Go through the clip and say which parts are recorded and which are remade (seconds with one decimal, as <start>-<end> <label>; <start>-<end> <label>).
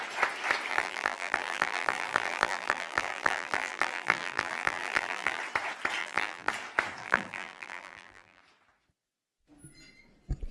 0.0-0.7 recorded; 0.7-5.4 remade; 5.4-6.0 recorded; 6.0-6.5 remade; 6.5-7.0 recorded; 7.0-8.4 remade; 8.4-10.5 recorded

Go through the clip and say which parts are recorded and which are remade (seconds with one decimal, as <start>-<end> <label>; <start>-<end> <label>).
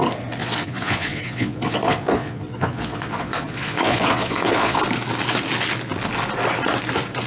0.0-0.4 recorded; 0.4-4.8 remade; 4.8-7.3 recorded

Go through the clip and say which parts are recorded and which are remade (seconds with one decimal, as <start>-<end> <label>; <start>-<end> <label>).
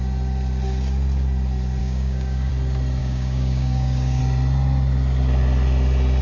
0.0-1.8 recorded; 1.8-2.5 remade; 2.5-3.0 recorded; 3.0-4.2 remade; 4.2-6.2 recorded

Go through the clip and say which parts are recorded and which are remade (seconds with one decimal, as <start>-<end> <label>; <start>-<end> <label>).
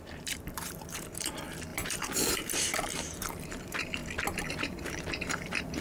0.0-4.0 remade; 4.0-4.5 recorded; 4.5-5.8 remade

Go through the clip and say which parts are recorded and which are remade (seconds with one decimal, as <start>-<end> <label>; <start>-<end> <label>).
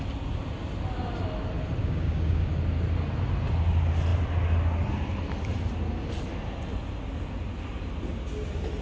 0.0-1.8 recorded; 1.8-2.5 remade; 2.5-8.8 recorded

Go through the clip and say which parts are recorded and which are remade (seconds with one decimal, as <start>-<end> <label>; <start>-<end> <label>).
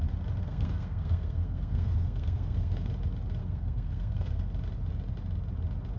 0.0-0.4 recorded; 0.4-2.9 remade; 2.9-3.4 recorded; 3.4-4.5 remade; 4.5-6.0 recorded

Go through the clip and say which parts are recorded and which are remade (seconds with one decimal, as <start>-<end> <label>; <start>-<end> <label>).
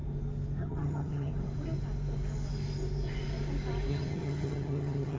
0.0-0.6 recorded; 0.6-1.3 remade; 1.3-3.9 recorded; 3.9-5.2 remade